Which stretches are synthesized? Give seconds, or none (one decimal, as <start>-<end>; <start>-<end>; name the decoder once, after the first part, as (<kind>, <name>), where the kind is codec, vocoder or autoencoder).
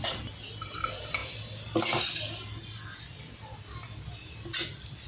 0.0-0.5 (vocoder, BigVGAN v2)